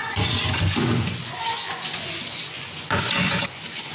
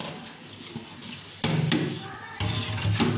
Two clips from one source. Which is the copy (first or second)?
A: first